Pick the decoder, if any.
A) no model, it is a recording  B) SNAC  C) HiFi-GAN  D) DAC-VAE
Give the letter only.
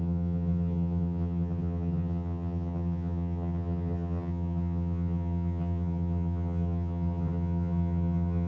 C